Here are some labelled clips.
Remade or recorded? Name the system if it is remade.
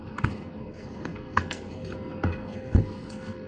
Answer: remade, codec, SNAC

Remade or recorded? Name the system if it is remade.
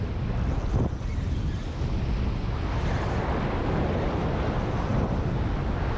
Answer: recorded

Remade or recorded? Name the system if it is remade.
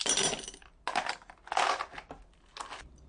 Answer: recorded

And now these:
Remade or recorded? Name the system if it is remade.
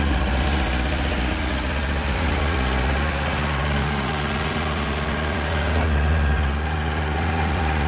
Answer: remade, vocoder, Vocos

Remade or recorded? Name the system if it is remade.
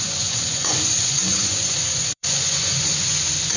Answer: remade, vocoder, Vocos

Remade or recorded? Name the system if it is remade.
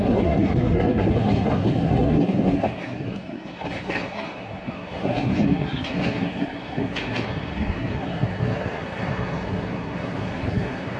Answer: remade, codec, SNAC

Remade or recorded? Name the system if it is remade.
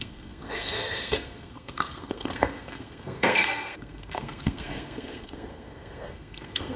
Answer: remade, codec, SNAC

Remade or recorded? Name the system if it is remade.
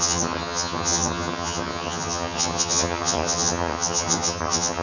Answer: remade, vocoder, HiFi-GAN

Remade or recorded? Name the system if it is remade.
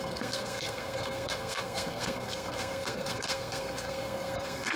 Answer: remade, codec, SNAC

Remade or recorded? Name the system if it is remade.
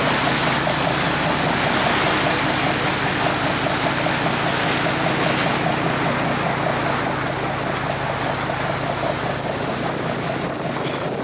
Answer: recorded